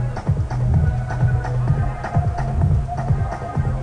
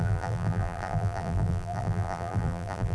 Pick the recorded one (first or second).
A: first